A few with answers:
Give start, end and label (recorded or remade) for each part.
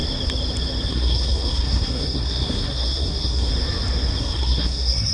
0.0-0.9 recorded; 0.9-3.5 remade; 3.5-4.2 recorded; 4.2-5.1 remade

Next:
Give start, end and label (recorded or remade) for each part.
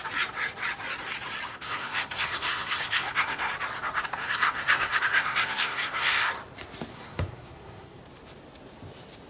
0.0-1.5 recorded; 1.5-3.5 remade; 3.5-4.1 recorded; 4.1-6.3 remade; 6.3-6.9 recorded; 6.9-8.0 remade; 8.0-9.3 recorded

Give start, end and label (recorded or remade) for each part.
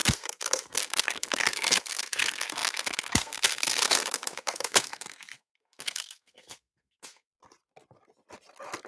0.0-7.3 remade; 7.3-8.9 recorded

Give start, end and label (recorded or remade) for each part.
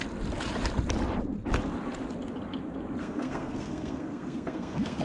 0.0-3.0 recorded; 3.0-5.0 remade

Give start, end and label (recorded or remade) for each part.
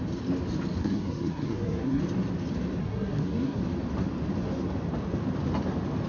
0.0-0.8 recorded; 0.8-2.0 remade; 2.0-2.8 recorded; 2.8-3.6 remade; 3.6-6.1 recorded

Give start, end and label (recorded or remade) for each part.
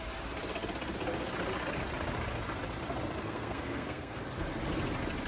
0.0-3.2 recorded; 3.2-4.2 remade; 4.2-5.3 recorded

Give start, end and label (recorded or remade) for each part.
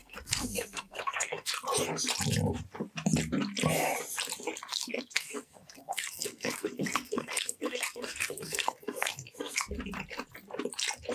0.0-1.5 remade; 1.5-4.7 recorded; 4.7-9.7 remade; 9.7-11.1 recorded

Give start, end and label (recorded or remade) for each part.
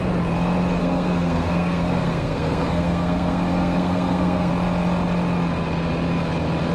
0.0-0.8 recorded; 0.8-4.5 remade; 4.5-6.7 recorded